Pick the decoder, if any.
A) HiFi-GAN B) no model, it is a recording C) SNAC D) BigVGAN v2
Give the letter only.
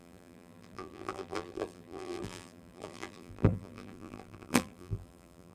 D